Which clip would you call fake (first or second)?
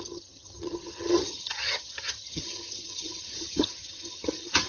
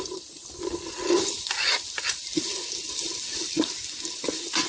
first